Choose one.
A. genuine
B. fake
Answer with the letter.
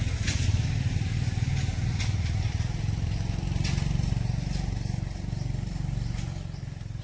A